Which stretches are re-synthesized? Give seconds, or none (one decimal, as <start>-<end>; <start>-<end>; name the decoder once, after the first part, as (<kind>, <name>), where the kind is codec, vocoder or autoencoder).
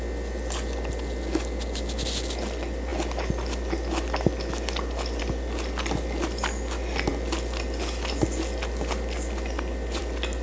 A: none